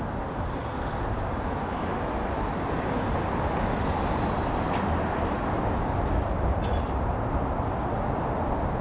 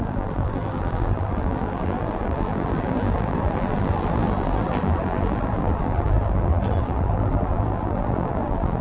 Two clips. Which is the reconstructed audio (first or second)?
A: second